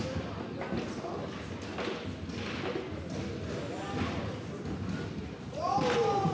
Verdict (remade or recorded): recorded